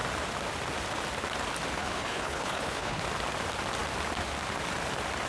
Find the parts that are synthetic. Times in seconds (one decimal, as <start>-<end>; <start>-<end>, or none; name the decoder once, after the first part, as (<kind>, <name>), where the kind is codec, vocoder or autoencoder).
1.8-3.0 (codec, HILCodec)